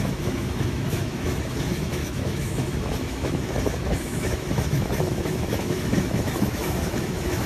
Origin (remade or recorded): remade